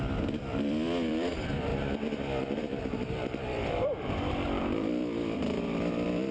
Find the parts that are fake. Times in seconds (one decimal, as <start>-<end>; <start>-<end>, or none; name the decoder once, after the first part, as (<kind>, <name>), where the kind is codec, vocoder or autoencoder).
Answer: 0.0-1.7 (vocoder, BigVGAN v2); 2.8-6.3